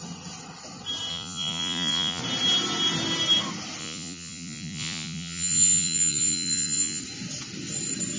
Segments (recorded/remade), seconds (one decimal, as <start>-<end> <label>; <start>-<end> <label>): 0.0-1.1 recorded; 1.1-2.2 remade; 2.2-3.8 recorded; 3.8-7.0 remade; 7.0-8.2 recorded